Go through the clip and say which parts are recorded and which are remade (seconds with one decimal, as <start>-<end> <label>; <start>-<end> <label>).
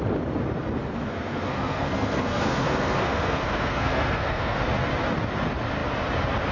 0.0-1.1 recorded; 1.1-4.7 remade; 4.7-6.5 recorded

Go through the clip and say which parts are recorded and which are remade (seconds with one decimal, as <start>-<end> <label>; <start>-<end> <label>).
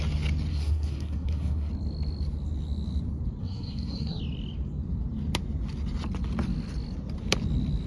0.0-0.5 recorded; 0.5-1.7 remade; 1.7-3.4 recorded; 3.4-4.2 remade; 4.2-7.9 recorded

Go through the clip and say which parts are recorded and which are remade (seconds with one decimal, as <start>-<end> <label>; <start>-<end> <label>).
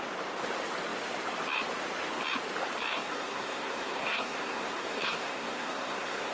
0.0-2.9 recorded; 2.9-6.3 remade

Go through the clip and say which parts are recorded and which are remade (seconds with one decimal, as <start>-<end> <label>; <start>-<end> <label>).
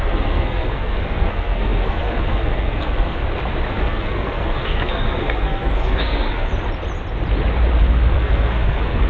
0.0-3.2 remade; 3.2-3.8 recorded; 3.8-6.5 remade; 6.5-7.8 recorded; 7.8-9.1 remade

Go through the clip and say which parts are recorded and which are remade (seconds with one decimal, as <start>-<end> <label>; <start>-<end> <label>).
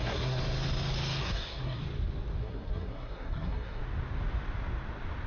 0.0-0.4 remade; 0.4-1.2 recorded; 1.2-1.8 remade; 1.8-2.4 recorded; 2.4-3.8 remade; 3.8-5.3 recorded